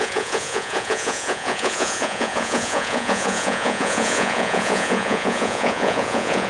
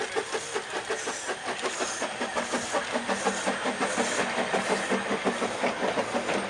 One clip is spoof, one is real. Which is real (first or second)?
second